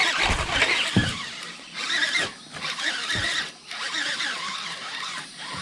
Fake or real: fake